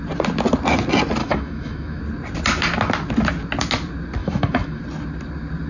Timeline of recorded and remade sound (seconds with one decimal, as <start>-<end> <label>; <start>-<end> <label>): 0.0-1.2 recorded; 1.2-2.0 remade; 2.0-4.2 recorded; 4.2-4.8 remade; 4.8-5.7 recorded